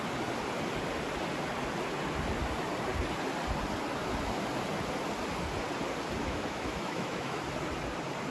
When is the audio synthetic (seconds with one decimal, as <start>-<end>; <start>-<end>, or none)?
6.2-7.4